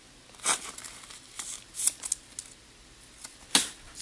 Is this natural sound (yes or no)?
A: yes